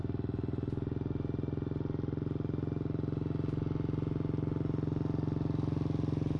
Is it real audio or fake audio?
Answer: real